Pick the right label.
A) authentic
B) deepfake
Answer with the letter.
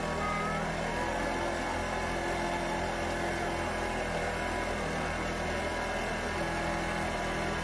A